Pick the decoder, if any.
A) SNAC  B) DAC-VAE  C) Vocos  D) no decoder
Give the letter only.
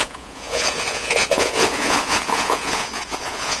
C